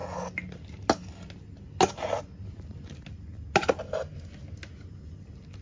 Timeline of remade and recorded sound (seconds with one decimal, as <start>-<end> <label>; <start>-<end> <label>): 0.0-5.6 recorded